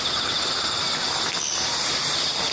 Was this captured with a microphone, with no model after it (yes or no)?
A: yes